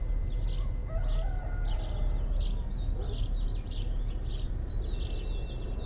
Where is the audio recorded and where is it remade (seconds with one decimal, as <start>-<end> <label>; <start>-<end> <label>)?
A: 0.0-5.9 recorded